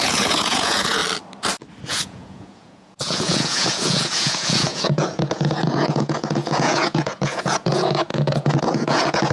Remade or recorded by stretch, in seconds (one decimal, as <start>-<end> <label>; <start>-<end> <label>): 0.0-1.0 remade; 1.0-1.9 recorded; 1.9-9.3 remade